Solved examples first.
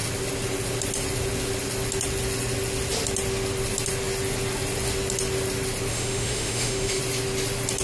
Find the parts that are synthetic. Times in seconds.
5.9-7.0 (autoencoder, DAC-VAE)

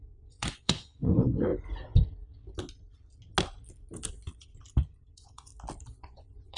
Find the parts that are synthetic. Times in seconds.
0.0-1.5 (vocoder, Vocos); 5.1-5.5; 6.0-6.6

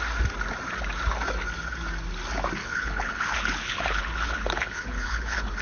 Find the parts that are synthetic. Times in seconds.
2.6-5.6 (codec, HILCodec)